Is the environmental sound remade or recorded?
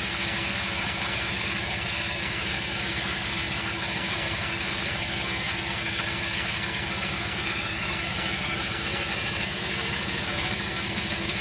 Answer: remade